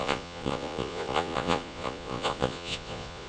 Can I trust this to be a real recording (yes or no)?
no